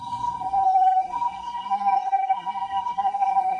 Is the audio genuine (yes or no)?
no